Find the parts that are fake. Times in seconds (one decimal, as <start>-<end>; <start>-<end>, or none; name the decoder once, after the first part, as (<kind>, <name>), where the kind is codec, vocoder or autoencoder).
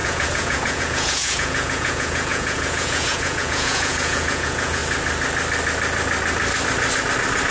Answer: 0.0-4.8 (vocoder, Vocos)